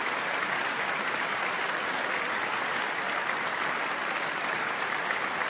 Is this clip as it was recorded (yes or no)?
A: yes